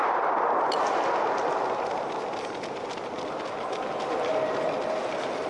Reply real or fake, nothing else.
real